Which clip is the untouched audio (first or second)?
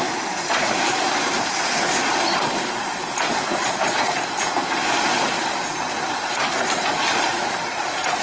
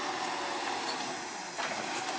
second